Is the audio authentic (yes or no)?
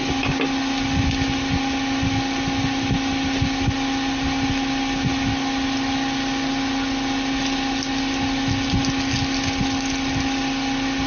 yes